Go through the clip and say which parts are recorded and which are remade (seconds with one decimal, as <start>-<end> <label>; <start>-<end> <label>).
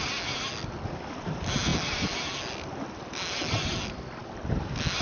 0.0-5.0 recorded